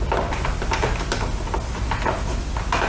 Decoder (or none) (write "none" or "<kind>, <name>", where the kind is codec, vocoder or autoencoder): none